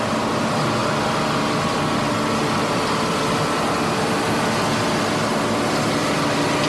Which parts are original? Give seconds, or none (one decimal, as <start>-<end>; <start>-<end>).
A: 0.0-6.7